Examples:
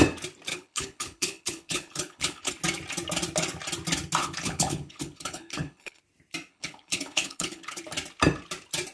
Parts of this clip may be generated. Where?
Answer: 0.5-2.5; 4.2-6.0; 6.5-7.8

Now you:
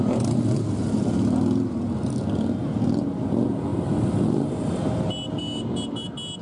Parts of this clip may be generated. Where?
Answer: none

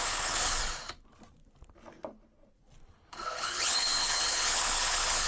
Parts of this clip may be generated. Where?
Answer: 0.0-0.6; 3.1-5.3

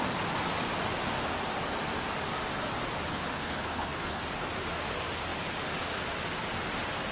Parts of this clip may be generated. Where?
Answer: 3.1-4.2

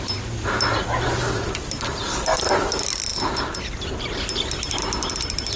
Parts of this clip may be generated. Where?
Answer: none

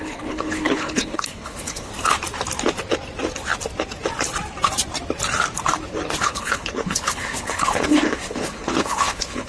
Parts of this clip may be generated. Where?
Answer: 0.0-1.9; 6.2-9.5

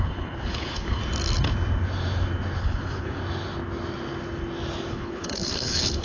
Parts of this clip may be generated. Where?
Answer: 0.0-1.0; 2.6-3.2; 4.9-6.0

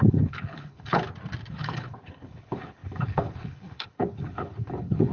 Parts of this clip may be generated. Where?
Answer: 0.0-1.0; 1.5-5.1